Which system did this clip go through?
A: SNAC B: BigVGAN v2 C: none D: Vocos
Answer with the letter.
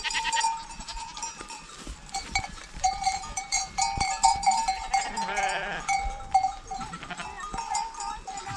B